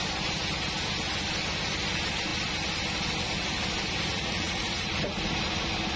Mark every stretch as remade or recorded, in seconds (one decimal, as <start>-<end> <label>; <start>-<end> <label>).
0.0-4.1 recorded; 4.1-4.9 remade; 4.9-6.0 recorded